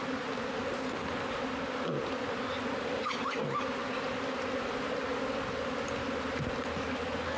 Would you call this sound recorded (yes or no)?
yes